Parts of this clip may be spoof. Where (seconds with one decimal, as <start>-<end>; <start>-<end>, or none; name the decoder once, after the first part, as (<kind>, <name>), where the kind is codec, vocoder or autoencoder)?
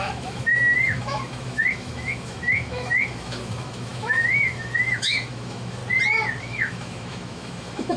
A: 0.0-5.8 (autoencoder, DAC-VAE); 6.4-8.0